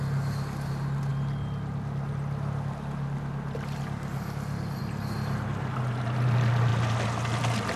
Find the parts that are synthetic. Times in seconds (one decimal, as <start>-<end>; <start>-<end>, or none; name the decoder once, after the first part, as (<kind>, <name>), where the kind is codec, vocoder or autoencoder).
none